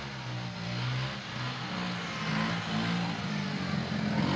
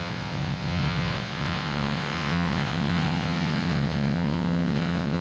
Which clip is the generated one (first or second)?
second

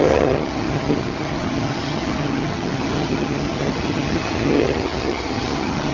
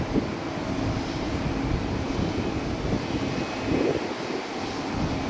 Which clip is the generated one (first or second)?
first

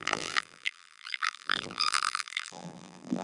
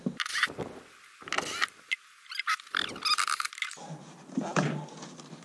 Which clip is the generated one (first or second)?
first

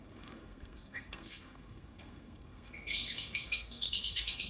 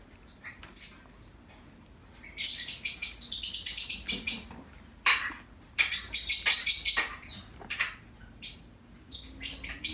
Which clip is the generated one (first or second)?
first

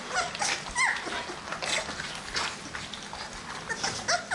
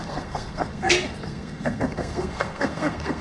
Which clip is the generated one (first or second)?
second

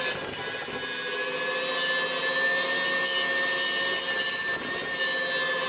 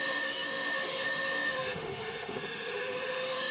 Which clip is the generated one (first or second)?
second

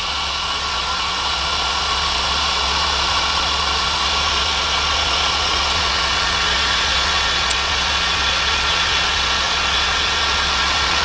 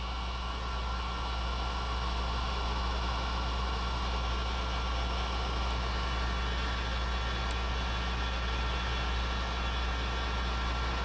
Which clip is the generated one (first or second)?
first